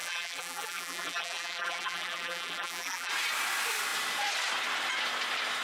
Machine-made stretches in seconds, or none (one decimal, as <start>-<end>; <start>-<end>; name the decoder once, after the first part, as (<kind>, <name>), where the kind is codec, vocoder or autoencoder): 0.0-3.1 (vocoder, BigVGAN v2)